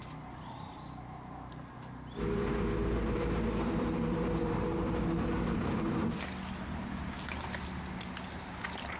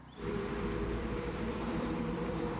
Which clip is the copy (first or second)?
second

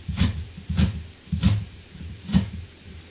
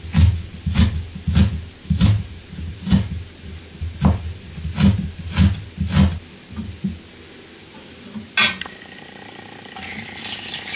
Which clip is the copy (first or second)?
first